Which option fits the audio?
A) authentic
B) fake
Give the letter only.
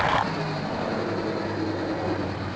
A